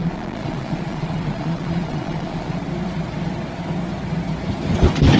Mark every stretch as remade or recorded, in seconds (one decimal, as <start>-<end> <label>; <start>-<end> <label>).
0.0-2.6 remade; 2.6-5.2 recorded